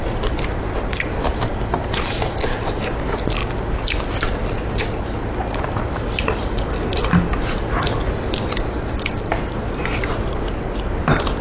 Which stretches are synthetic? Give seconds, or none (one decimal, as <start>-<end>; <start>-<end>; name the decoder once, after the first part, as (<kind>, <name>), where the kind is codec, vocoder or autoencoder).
0.0-3.4 (vocoder, BigVGAN v2); 4.0-4.4; 8.5-11.4